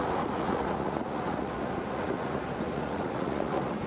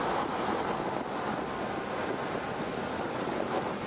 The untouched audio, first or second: second